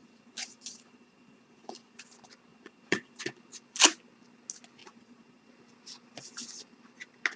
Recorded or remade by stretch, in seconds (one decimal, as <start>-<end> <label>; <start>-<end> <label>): 0.0-2.0 remade; 2.0-2.5 recorded; 2.5-3.2 remade; 3.2-4.8 recorded; 4.8-5.5 remade; 5.5-7.4 recorded